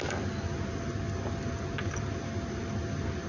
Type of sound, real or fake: real